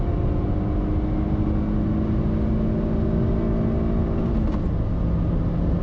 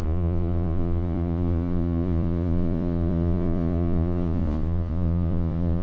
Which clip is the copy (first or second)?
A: second